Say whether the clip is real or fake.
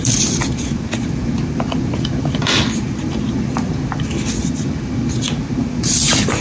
real